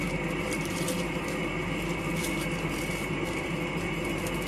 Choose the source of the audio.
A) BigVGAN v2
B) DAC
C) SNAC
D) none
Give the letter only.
D